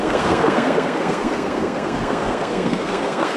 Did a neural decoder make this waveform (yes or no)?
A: yes